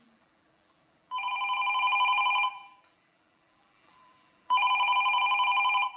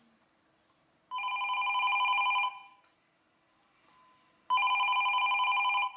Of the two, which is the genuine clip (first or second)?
second